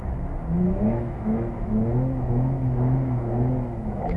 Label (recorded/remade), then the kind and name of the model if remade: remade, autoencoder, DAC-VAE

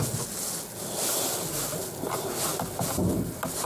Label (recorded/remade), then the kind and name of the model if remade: recorded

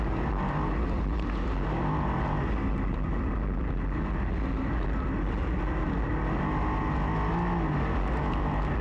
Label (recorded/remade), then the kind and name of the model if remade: recorded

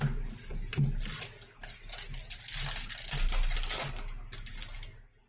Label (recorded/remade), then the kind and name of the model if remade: recorded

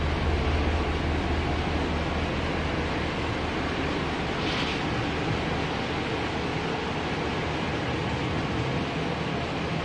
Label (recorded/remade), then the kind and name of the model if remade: recorded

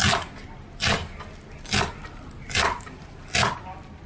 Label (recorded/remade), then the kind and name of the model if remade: recorded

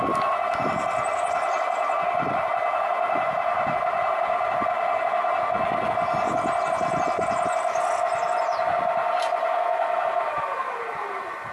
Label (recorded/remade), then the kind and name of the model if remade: recorded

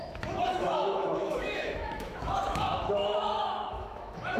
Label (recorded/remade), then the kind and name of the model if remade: remade, autoencoder, DAC-VAE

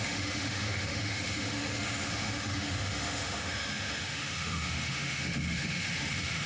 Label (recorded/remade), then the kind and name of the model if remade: remade, autoencoder, DAC-VAE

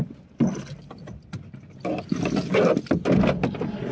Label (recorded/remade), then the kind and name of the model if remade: recorded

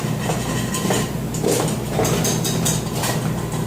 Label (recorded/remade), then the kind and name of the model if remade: recorded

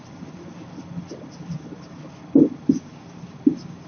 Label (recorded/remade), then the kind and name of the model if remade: recorded